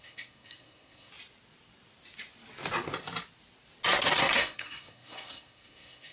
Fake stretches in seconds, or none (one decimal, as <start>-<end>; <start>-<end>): 0.0-1.1; 4.2-6.1